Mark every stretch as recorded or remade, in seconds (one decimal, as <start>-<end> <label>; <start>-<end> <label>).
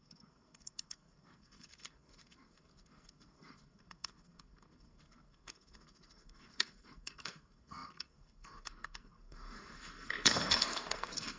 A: 0.0-11.4 remade